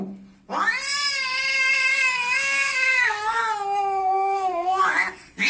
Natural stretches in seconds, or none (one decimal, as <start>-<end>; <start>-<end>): 0.0-1.9; 3.4-4.0; 4.8-5.5